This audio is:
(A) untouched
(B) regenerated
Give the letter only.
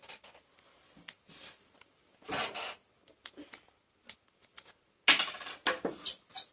A